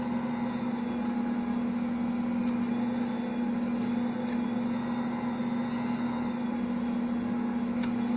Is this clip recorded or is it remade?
recorded